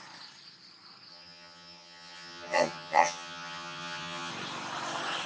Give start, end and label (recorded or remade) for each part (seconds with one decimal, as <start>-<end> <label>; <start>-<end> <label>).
0.0-1.1 recorded; 1.1-4.3 remade; 4.3-5.3 recorded